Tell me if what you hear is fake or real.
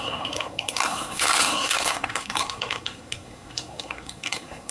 fake